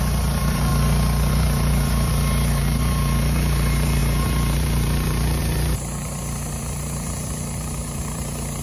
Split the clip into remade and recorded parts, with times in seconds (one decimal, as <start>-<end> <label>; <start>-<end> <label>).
0.0-0.7 remade; 0.7-1.3 recorded; 1.3-8.6 remade